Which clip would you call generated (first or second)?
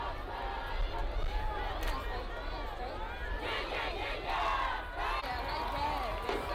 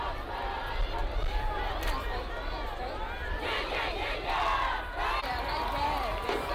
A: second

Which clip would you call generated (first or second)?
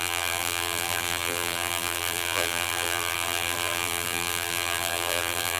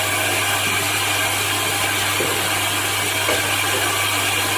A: first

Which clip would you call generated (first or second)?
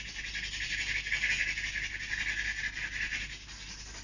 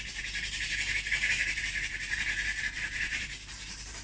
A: second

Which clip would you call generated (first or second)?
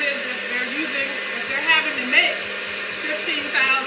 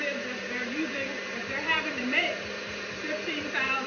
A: second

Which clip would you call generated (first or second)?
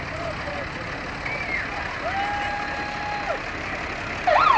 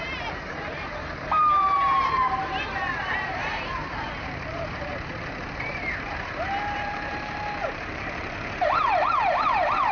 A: second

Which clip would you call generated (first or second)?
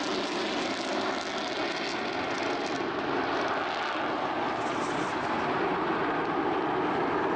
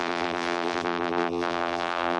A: second